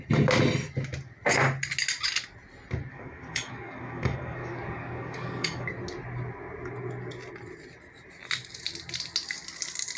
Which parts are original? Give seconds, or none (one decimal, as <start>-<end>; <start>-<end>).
0.0-2.9; 5.7-10.0